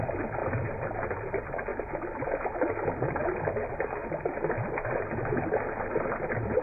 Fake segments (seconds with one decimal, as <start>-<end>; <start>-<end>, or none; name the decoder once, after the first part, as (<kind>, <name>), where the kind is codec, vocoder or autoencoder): none